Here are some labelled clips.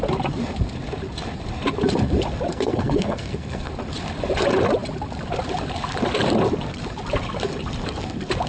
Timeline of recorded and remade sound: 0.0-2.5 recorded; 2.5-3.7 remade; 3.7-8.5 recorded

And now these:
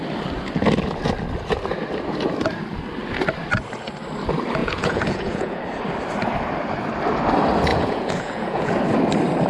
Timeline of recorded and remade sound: 0.0-4.6 recorded; 4.6-5.6 remade; 5.6-7.7 recorded; 7.7-8.7 remade; 8.7-9.5 recorded